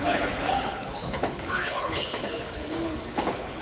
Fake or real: fake